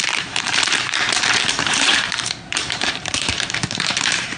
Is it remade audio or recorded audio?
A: remade